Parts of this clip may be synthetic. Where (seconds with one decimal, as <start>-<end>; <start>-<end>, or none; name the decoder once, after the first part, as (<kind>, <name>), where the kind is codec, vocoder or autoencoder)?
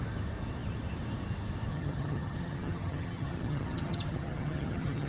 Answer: 1.7-5.1 (vocoder, HiFi-GAN)